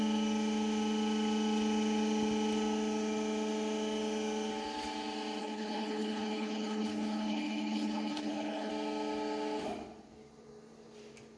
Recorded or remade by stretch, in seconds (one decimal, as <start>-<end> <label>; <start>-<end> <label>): 0.0-5.4 recorded; 5.4-8.7 remade; 8.7-11.4 recorded